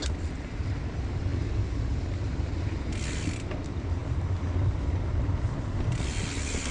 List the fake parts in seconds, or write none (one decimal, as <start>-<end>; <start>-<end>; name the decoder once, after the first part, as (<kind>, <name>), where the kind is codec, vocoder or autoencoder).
none

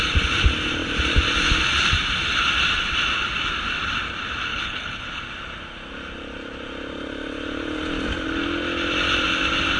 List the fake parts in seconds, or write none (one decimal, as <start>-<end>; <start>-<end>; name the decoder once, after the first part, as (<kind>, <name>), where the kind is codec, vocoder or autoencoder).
4.5-5.2 (codec, HILCodec)

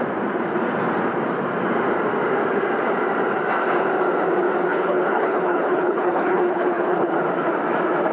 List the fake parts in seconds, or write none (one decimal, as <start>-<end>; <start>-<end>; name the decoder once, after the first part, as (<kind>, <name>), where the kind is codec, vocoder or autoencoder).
4.7-7.2 (codec, HILCodec)

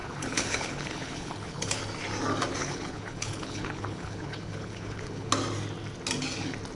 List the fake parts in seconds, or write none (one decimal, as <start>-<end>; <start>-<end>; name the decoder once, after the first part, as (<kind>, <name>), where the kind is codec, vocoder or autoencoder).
0.0-1.8 (codec, HILCodec); 2.6-5.3

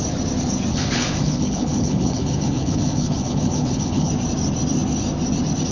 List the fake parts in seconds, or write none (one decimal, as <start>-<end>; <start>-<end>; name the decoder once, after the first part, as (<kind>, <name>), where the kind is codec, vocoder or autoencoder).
0.7-4.1 (codec, HILCodec)

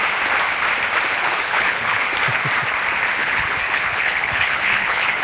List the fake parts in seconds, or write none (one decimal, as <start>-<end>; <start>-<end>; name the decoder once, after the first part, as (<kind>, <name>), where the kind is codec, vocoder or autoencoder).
1.1-2.1 (codec, HILCodec); 3.2-5.2

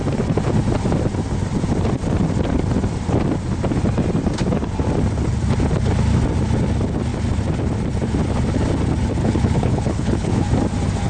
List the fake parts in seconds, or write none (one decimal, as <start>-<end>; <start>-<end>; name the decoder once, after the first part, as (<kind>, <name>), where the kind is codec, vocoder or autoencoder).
9.2-10.4 (codec, HILCodec)

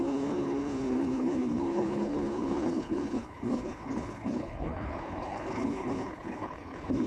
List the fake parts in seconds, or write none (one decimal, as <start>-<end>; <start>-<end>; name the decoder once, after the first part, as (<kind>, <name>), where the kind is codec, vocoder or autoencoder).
0.0-7.1 (codec, HILCodec)